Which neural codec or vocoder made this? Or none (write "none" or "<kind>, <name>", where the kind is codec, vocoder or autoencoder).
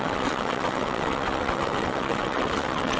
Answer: vocoder, WaveNeXt